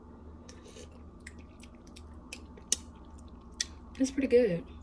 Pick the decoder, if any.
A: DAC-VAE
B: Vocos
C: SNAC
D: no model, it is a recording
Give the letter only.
D